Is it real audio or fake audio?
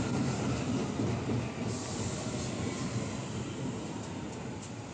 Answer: real